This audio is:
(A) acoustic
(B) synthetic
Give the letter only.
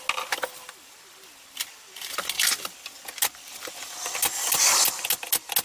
A